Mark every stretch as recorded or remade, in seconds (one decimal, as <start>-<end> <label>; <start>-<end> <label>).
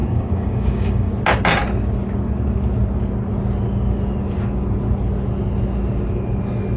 0.0-1.1 remade; 1.1-6.8 recorded